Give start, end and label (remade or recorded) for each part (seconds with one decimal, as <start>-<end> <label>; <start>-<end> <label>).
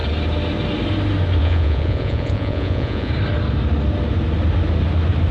0.0-1.4 recorded; 1.4-3.1 remade; 3.1-5.3 recorded